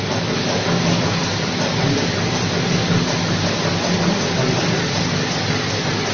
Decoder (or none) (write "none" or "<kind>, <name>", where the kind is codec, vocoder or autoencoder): none